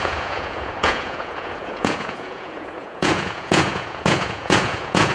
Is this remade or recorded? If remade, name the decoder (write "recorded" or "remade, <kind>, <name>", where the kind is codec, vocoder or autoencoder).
remade, vocoder, Vocos